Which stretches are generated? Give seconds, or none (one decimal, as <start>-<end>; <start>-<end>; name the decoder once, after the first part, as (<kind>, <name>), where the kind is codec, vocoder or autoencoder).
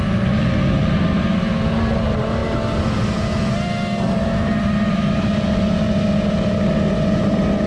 none